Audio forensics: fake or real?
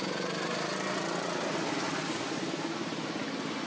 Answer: real